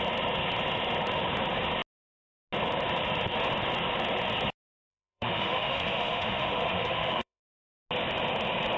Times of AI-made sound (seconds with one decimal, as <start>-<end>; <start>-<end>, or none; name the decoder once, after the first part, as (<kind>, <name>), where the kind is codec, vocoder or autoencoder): 4.9-7.4 (autoencoder, DAC-VAE)